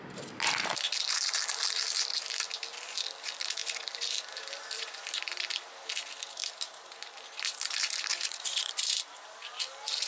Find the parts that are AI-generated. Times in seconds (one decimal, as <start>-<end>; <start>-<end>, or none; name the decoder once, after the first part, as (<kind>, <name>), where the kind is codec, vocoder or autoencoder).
8.1-8.7 (vocoder, Vocos)